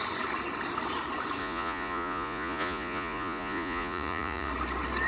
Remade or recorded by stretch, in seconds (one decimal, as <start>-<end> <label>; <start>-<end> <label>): 0.0-1.4 recorded; 1.4-4.5 remade; 4.5-5.1 recorded